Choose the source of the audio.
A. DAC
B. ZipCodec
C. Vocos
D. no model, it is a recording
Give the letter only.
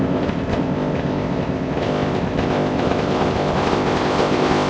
B